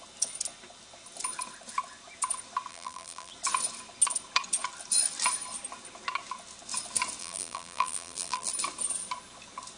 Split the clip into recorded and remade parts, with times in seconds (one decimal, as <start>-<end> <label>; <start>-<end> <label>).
0.0-2.7 recorded; 2.7-3.3 remade; 3.3-7.2 recorded; 7.2-8.5 remade; 8.5-9.8 recorded